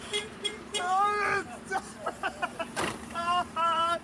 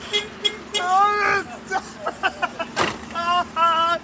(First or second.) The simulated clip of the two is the first